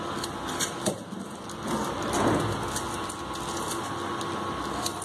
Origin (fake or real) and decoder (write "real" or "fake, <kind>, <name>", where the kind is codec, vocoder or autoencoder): real